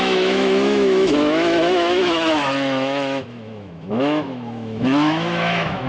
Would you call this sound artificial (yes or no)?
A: yes